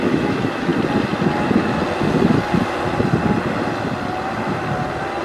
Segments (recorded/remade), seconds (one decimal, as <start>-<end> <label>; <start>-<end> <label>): 0.0-0.7 remade; 0.7-1.4 recorded; 1.4-1.8 remade; 1.8-5.2 recorded